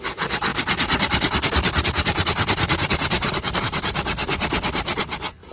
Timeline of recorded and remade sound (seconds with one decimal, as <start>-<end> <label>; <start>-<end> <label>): 0.0-0.5 recorded; 0.5-3.6 remade; 3.6-5.5 recorded

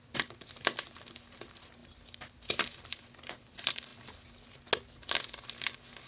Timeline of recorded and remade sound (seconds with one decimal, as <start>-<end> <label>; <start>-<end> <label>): 0.0-3.9 remade; 3.9-5.2 recorded; 5.2-6.1 remade

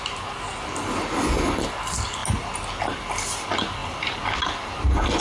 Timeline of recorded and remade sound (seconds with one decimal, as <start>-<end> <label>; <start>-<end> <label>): 0.0-3.8 recorded; 3.8-4.8 remade; 4.8-5.2 recorded

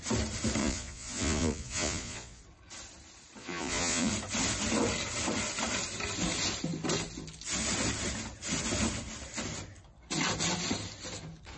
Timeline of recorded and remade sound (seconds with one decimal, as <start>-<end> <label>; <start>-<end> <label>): 0.0-0.6 recorded; 0.6-2.4 remade; 2.4-3.4 recorded; 3.4-4.1 remade; 4.1-11.6 recorded

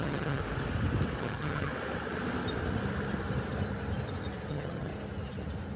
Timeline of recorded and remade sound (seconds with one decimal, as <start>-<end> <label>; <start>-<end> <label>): 0.0-0.4 remade; 0.4-1.2 recorded; 1.2-1.7 remade; 1.7-4.5 recorded; 4.5-4.9 remade; 4.9-5.8 recorded